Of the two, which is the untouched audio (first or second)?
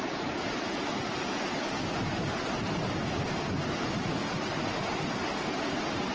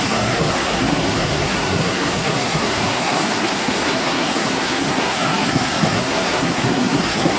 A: first